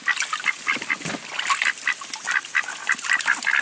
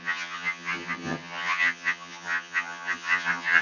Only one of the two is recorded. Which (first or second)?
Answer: first